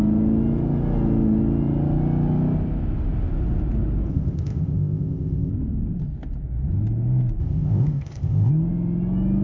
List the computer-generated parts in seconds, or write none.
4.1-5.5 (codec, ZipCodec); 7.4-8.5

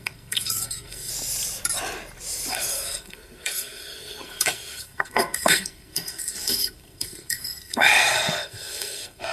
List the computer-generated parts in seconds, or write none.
0.0-1.1 (codec, SNAC); 2.5-9.3

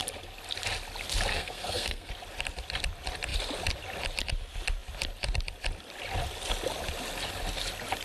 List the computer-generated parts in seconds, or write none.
1.3-2.1 (codec, SNAC)